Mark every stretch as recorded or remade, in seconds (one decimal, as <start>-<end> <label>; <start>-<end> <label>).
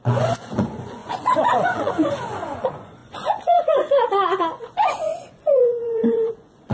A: 0.0-6.7 remade